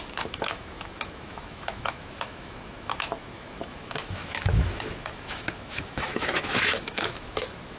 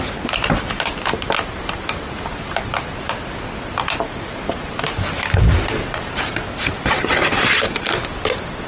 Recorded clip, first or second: second